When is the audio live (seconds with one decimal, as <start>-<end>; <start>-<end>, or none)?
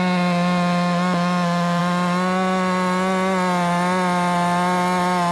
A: 0.0-5.3